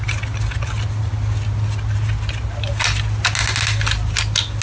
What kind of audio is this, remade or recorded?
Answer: recorded